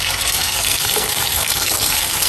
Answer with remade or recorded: remade